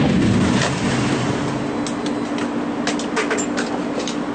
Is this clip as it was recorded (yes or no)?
yes